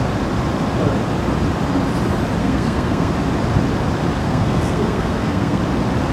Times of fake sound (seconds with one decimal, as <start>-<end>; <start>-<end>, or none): 2.4-3.1; 4.2-5.6